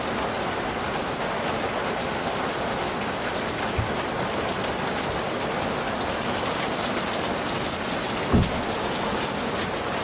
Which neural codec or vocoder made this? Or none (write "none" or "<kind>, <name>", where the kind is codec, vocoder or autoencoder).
none